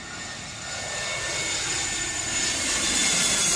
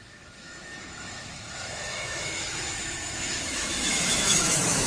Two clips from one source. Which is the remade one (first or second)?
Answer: second